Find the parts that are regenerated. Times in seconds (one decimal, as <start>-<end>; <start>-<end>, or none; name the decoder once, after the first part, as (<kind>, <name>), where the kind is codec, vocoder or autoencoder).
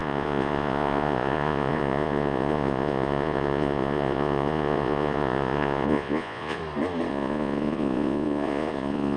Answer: 0.0-6.6 (vocoder, Vocos); 7.1-9.2